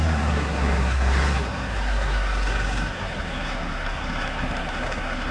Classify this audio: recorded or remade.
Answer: remade